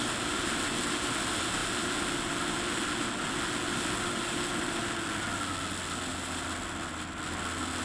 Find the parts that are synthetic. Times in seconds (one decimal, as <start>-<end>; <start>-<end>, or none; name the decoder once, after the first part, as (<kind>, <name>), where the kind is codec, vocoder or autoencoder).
none